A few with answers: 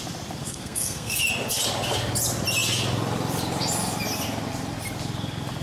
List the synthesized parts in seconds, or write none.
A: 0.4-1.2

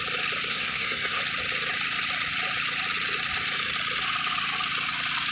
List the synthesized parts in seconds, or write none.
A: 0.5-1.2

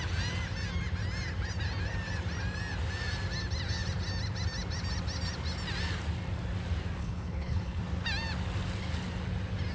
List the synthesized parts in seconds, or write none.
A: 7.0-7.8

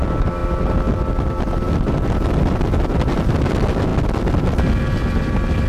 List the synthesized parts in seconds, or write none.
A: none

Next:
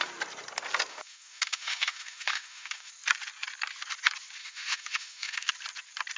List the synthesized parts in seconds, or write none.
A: 0.9-2.9; 4.4-5.5

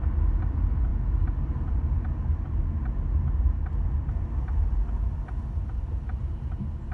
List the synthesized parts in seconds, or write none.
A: none